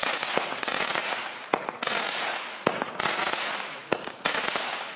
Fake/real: fake